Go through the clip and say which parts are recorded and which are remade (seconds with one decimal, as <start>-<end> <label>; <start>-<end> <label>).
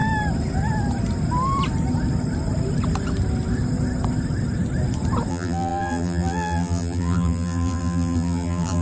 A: 0.0-5.3 recorded; 5.3-8.8 remade